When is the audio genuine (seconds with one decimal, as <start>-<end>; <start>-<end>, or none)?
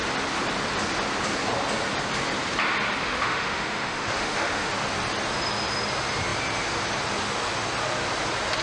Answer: 0.0-3.0; 4.7-8.6